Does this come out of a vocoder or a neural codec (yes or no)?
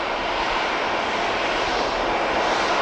no